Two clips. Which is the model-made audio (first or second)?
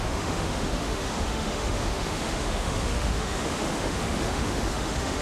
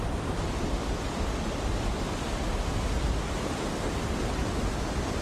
first